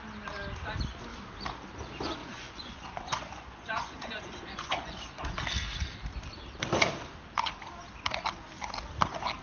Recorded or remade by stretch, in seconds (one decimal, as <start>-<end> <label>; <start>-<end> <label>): 0.0-2.2 recorded; 2.2-5.4 remade; 5.4-9.4 recorded